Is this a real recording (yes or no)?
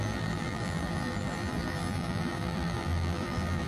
no